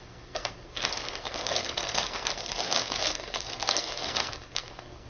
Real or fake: fake